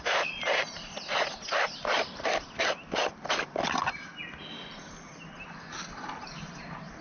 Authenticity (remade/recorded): recorded